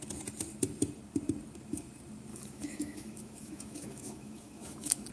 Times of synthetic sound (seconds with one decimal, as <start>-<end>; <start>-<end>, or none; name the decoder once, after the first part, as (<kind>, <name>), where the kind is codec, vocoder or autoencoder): 2.3-5.1 (autoencoder, DAC-VAE)